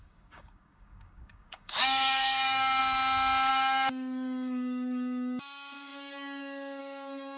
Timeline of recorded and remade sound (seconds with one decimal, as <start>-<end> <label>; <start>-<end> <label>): 0.0-2.8 remade; 2.8-3.5 recorded; 3.5-7.4 remade